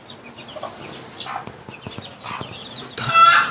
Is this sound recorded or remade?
recorded